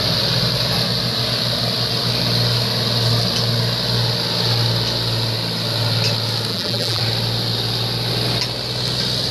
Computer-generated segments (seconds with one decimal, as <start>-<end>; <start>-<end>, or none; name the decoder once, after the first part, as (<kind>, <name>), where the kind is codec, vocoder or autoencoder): 6.5-7.0 (vocoder, BigVGAN v2)